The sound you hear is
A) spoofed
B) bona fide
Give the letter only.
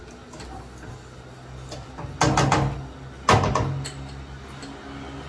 B